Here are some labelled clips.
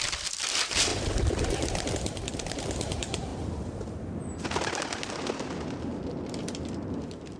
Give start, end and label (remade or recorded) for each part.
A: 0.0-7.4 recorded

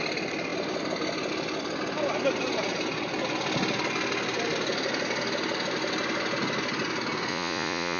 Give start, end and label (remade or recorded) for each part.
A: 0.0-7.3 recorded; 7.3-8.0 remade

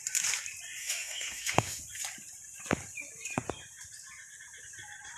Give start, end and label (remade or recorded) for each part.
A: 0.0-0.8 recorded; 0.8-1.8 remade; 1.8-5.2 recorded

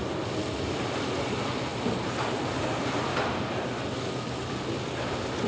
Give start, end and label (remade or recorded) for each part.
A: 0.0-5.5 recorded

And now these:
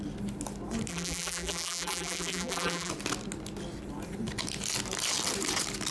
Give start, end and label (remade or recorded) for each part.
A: 0.0-0.9 recorded; 0.9-2.9 remade; 2.9-5.9 recorded

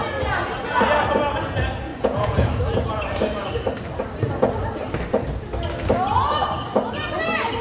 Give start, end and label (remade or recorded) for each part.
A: 0.0-1.9 recorded; 1.9-2.5 remade; 2.5-7.6 recorded

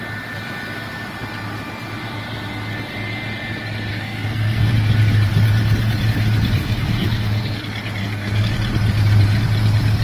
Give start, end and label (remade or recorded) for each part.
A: 0.0-3.9 recorded; 3.9-4.7 remade; 4.7-6.6 recorded; 6.6-7.6 remade; 7.6-8.0 recorded; 8.0-8.5 remade; 8.5-10.0 recorded